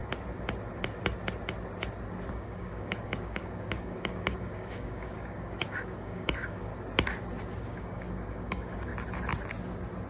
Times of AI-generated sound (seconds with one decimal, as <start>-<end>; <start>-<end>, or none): 2.3-6.7; 7.6-8.9